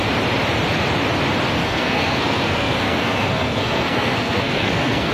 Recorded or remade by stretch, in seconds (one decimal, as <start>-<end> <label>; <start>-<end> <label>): 0.0-1.6 recorded; 1.6-5.1 remade

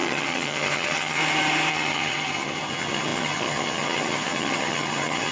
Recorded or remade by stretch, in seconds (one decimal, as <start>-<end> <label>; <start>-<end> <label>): 0.0-1.2 remade; 1.2-1.7 recorded; 1.7-5.3 remade

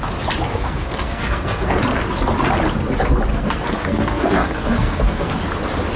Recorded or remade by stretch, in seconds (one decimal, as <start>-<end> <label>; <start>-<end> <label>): 0.0-0.5 recorded; 0.5-1.8 remade; 1.8-3.3 recorded; 3.3-5.3 remade; 5.3-6.0 recorded

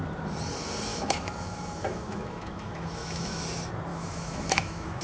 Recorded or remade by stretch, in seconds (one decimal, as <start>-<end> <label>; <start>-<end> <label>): 0.0-0.9 recorded; 0.9-3.4 remade; 3.4-3.9 recorded; 3.9-5.0 remade

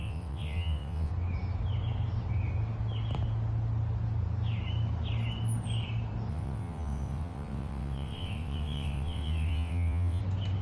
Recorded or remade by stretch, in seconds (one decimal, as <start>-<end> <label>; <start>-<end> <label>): 0.0-1.1 remade; 1.1-6.3 recorded; 6.3-10.2 remade; 10.2-10.6 recorded

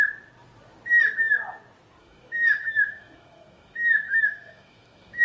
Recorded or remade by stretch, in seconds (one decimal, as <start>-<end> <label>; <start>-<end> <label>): 0.0-2.0 recorded; 2.0-5.2 remade

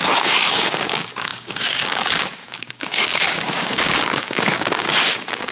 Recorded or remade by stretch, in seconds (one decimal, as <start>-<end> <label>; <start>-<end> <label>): 0.0-5.5 remade

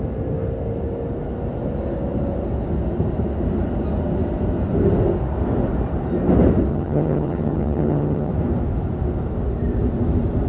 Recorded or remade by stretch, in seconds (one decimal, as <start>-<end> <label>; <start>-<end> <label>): 0.0-6.7 recorded; 6.7-8.3 remade; 8.3-10.5 recorded